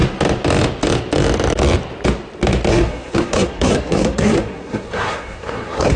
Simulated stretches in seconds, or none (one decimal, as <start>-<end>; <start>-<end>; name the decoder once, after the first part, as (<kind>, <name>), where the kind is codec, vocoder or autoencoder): 2.7-6.0 (codec, SNAC)